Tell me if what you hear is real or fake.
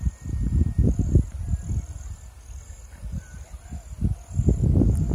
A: real